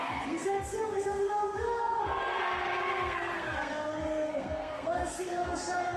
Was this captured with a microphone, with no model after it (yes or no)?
no